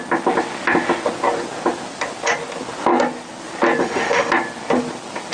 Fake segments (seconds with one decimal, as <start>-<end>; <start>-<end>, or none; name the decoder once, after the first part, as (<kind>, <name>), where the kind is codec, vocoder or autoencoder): 3.8-4.3 (autoencoder, DAC-VAE)